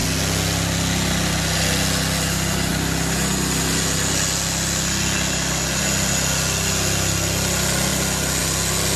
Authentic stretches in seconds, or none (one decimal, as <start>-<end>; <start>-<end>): 0.0-9.0